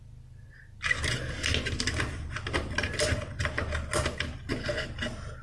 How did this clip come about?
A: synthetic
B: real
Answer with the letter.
B